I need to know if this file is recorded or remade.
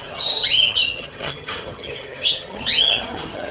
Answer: remade